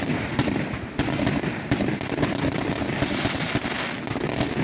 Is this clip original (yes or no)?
yes